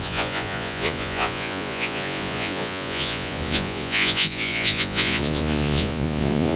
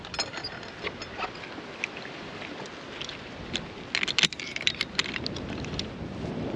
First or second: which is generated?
first